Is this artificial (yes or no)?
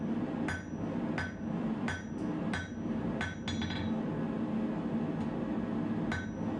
no